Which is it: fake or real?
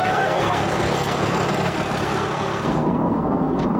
fake